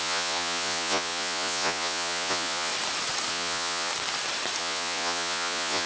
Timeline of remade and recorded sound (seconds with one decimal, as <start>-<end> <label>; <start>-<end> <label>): 0.0-2.7 remade; 2.7-3.3 recorded; 3.3-3.9 remade; 3.9-4.6 recorded; 4.6-5.9 remade